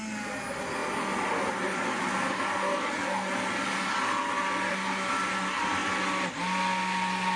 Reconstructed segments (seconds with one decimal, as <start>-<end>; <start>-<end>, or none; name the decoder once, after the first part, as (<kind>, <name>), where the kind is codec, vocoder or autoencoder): none